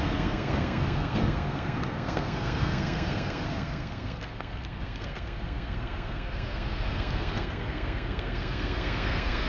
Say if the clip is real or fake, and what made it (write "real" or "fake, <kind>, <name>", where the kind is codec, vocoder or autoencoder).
fake, codec, SNAC